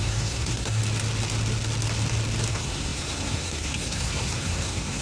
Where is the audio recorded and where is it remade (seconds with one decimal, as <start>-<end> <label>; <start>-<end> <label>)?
0.0-0.8 remade; 0.8-2.5 recorded; 2.5-5.0 remade